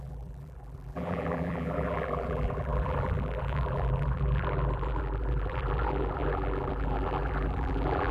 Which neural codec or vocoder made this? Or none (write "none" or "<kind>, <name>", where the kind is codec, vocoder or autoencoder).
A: vocoder, BigVGAN v2